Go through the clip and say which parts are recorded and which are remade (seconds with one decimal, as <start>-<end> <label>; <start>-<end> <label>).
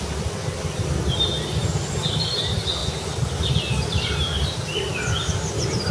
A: 0.0-5.9 recorded